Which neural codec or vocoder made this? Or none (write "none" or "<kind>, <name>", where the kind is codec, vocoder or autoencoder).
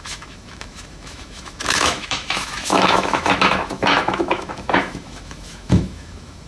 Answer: autoencoder, DAC-VAE